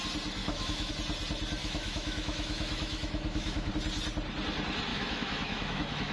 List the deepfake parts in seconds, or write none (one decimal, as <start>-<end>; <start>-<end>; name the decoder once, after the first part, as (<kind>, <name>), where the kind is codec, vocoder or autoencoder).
0.4-0.9 (autoencoder, DAC-VAE); 1.6-3.7; 4.9-6.1

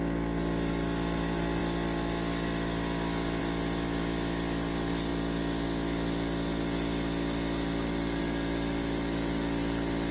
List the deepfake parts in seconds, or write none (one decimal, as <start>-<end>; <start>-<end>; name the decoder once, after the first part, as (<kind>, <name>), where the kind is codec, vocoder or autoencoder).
none

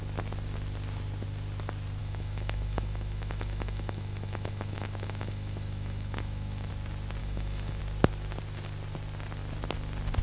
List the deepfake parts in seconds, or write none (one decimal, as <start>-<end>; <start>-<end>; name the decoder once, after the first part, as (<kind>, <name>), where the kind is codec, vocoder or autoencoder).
2.0-6.7 (autoencoder, DAC-VAE); 7.2-7.8

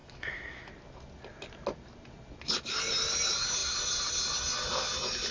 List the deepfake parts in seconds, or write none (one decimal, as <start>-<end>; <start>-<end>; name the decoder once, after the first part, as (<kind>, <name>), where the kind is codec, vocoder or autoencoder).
0.0-0.7 (autoencoder, DAC-VAE)

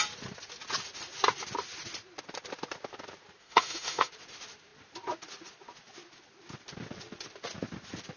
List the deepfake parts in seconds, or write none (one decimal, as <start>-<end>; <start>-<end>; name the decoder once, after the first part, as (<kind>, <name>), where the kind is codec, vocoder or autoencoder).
3.4-4.1 (autoencoder, DAC-VAE)

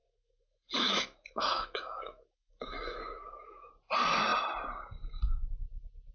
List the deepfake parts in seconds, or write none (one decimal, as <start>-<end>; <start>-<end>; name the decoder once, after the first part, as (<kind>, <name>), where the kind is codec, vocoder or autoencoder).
0.0-3.7 (autoencoder, DAC-VAE)